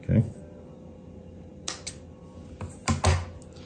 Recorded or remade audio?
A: recorded